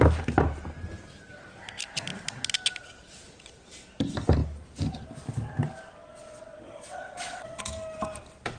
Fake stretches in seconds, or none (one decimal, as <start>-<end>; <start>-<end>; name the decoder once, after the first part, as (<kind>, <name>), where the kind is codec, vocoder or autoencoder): 6.1-7.6 (vocoder, WaveNeXt)